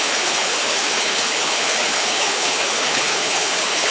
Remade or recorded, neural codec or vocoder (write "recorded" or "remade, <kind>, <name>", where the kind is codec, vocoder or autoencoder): remade, codec, HILCodec